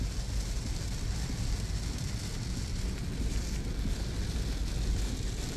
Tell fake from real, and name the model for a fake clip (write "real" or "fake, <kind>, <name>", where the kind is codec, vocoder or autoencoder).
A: real